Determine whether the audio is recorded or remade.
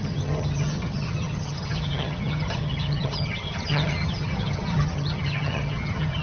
remade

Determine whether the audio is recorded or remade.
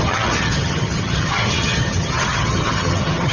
remade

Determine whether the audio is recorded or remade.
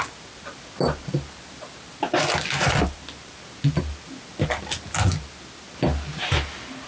recorded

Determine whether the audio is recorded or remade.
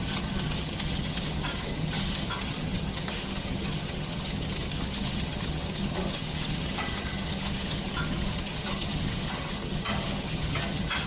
remade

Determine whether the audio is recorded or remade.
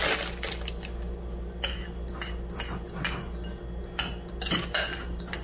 recorded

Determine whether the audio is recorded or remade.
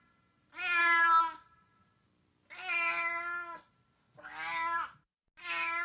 recorded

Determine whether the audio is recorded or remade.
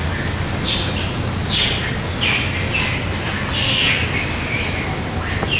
recorded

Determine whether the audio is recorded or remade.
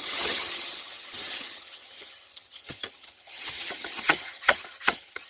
remade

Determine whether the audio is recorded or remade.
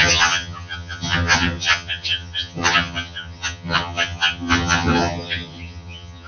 remade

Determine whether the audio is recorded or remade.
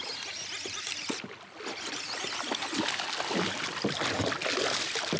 recorded